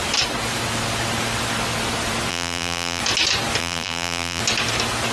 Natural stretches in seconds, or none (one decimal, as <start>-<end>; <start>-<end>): 0.0-2.3; 3.0-3.6; 4.4-5.1